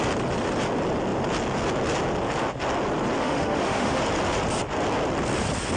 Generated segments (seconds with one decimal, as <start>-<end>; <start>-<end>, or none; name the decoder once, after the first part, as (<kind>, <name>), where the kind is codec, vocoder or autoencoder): 3.2-4.0 (autoencoder, DAC-VAE)